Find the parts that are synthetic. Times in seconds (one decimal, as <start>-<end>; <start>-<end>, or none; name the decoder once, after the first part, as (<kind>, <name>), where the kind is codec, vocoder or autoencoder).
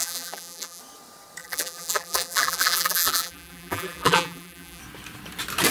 0.0-0.8 (vocoder, BigVGAN v2); 1.4-4.8